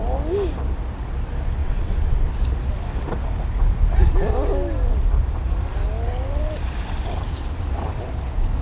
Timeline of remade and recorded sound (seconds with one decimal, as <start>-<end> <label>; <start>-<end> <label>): 0.0-1.6 recorded; 1.6-2.3 remade; 2.3-8.6 recorded